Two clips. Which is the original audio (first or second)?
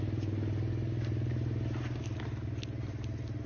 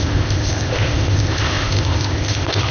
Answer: first